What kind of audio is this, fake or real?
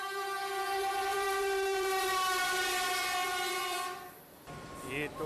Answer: fake